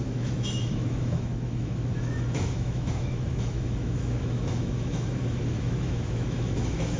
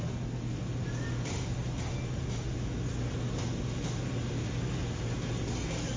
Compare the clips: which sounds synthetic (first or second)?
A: first